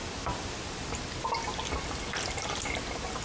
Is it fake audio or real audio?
real